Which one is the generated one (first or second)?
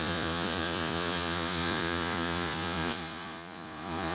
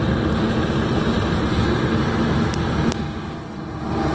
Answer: first